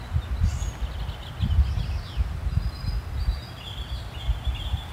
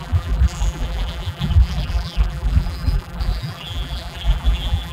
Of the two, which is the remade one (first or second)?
second